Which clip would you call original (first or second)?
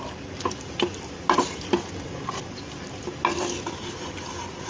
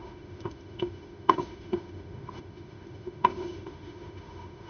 first